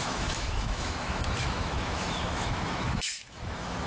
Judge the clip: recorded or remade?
remade